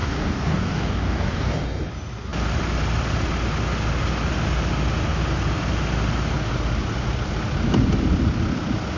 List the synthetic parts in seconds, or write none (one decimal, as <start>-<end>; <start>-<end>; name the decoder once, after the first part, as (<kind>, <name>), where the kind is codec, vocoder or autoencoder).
0.0-1.9 (codec, DAC)